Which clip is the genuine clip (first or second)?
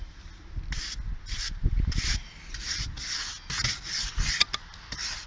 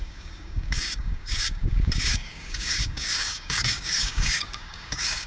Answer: first